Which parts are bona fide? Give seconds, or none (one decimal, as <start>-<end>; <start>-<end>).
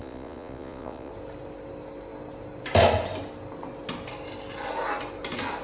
1.1-5.6